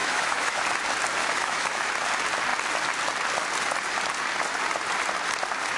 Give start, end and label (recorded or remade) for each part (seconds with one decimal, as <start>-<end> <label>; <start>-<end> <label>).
0.0-0.6 remade; 0.6-1.2 recorded; 1.2-1.9 remade; 1.9-5.8 recorded